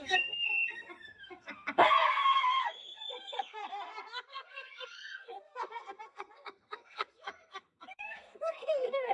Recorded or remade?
remade